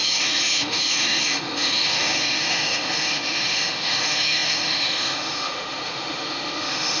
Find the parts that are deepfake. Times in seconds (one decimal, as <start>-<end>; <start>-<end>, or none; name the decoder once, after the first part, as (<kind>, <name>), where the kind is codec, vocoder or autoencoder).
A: 0.0-7.0 (autoencoder, DAC-VAE)